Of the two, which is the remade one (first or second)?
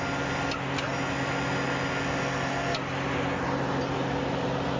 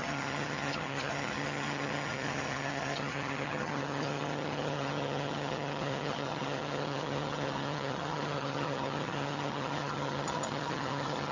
second